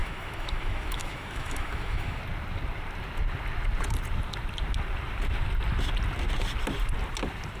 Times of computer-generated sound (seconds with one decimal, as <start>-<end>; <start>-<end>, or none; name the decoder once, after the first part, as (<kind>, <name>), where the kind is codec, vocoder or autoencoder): 0.0-2.2 (autoencoder, DAC-VAE)